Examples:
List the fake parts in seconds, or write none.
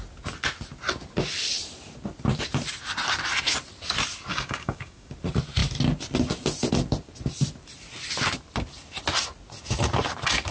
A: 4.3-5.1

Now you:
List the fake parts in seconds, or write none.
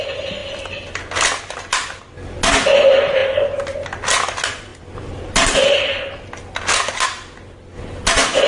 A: none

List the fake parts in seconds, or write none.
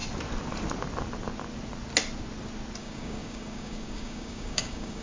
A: 2.8-5.0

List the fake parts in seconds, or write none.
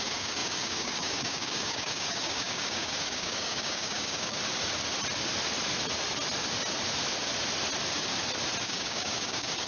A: 0.0-4.4; 8.6-9.7